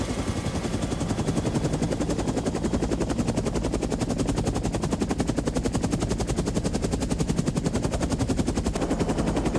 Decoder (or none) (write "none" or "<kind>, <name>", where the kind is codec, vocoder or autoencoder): none